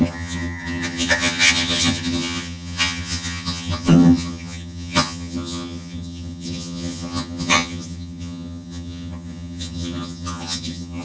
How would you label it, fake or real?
fake